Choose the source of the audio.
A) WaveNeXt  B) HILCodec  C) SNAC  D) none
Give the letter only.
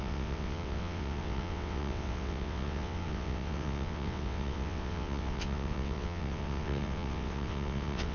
A